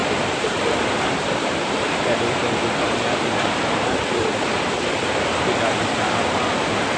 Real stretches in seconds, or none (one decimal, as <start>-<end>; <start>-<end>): 2.5-7.0